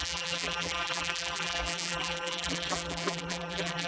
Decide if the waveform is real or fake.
fake